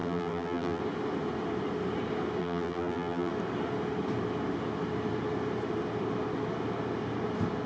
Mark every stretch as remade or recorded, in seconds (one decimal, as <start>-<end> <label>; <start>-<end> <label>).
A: 0.0-0.8 remade; 0.8-2.4 recorded; 2.4-3.3 remade; 3.3-7.7 recorded